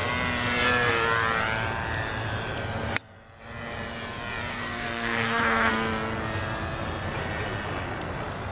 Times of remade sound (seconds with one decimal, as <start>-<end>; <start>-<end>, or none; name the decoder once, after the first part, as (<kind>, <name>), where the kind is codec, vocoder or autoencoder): 4.5-5.7 (codec, SNAC)